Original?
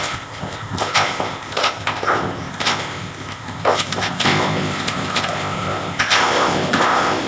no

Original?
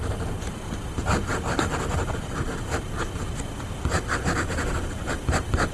yes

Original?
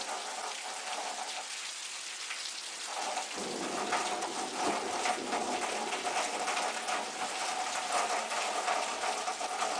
yes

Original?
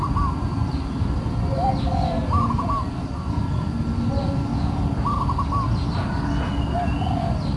yes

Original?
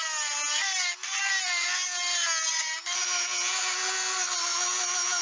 yes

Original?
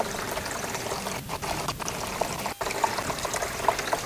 yes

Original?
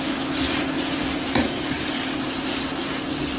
yes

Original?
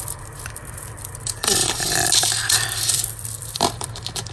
no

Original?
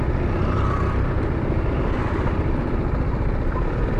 yes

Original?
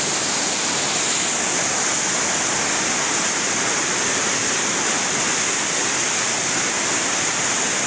yes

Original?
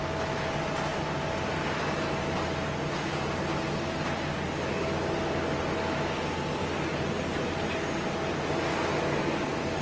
yes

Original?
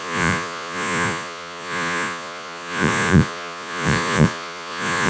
no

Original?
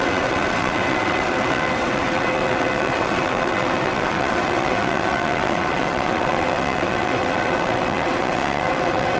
no